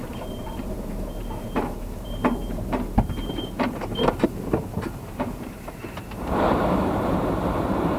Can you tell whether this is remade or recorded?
remade